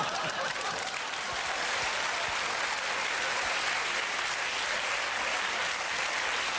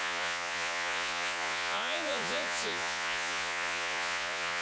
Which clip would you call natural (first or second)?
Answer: first